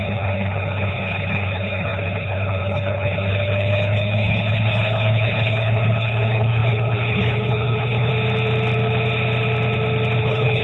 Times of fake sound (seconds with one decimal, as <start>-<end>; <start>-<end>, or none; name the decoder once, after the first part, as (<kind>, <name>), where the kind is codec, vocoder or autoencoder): 0.0-8.1 (codec, HILCodec); 10.2-10.6